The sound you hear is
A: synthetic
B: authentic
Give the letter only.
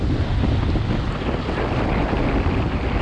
B